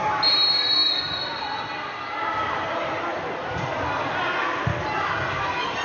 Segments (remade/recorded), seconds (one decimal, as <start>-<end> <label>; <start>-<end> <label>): 0.0-5.8 recorded

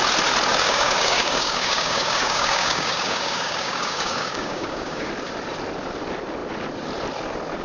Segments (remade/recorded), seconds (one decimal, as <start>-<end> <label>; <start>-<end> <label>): 0.0-0.5 recorded; 0.5-5.1 remade; 5.1-7.6 recorded

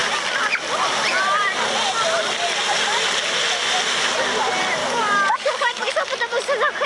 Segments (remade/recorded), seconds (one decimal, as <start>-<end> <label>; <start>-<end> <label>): 0.0-4.8 recorded; 4.8-5.9 remade; 5.9-6.9 recorded

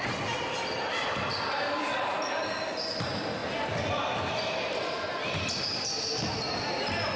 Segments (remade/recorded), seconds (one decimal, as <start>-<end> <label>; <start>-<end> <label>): 0.0-7.2 recorded

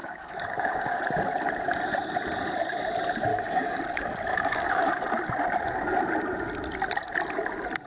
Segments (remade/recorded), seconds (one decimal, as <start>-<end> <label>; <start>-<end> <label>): 0.0-1.0 remade; 1.0-3.3 recorded; 3.3-3.8 remade; 3.8-4.3 recorded; 4.3-4.9 remade; 4.9-7.9 recorded

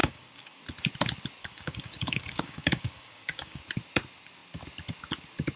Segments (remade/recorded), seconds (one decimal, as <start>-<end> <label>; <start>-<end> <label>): 0.0-0.6 remade; 0.6-1.4 recorded; 1.4-3.6 remade; 3.6-5.6 recorded

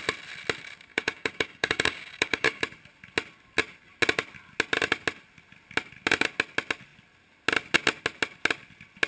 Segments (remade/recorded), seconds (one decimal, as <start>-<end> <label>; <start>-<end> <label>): 0.0-0.9 recorded; 0.9-2.6 remade; 2.6-9.1 recorded

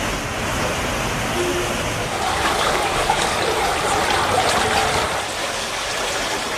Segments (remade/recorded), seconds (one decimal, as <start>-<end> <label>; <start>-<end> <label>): 0.0-2.0 recorded; 2.0-3.4 remade; 3.4-5.4 recorded; 5.4-5.9 remade; 5.9-6.6 recorded